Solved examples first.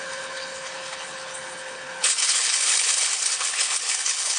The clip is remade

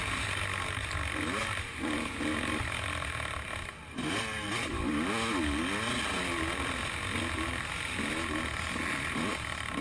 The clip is recorded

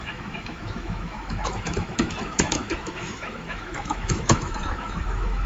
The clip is remade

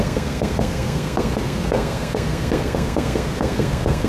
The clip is remade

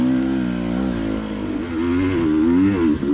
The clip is recorded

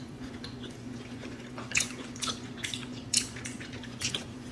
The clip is remade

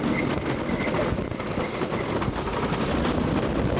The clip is recorded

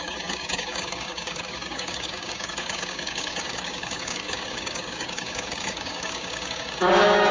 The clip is remade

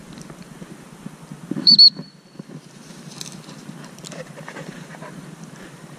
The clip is remade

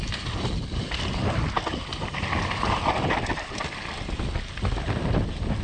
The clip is recorded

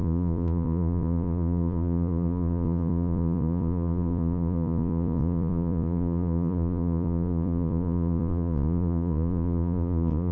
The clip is remade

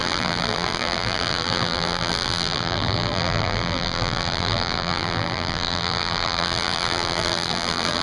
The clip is remade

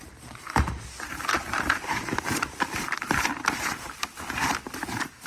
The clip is remade